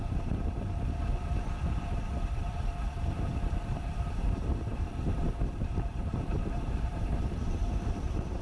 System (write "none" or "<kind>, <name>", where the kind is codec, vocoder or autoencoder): vocoder, BigVGAN v2